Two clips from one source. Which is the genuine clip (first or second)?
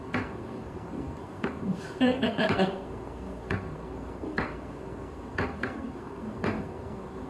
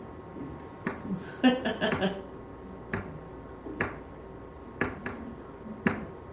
second